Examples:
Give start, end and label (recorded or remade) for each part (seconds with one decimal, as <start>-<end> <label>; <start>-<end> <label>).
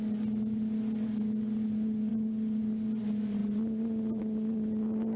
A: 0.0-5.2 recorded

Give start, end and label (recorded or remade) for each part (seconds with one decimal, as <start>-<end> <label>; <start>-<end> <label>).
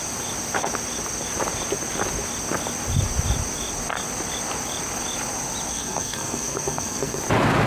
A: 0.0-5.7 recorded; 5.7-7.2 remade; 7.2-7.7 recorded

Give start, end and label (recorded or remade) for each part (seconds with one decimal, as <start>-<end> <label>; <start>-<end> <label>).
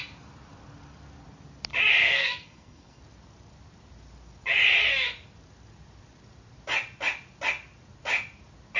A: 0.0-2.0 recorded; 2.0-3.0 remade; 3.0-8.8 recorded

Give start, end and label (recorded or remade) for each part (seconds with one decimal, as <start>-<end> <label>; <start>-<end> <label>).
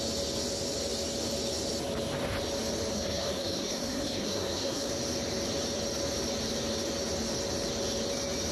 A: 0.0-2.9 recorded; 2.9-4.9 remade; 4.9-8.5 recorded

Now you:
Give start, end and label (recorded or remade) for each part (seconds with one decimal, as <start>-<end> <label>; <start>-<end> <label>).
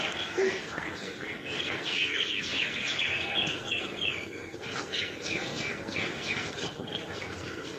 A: 0.0-7.8 remade